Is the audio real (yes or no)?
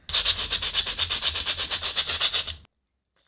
yes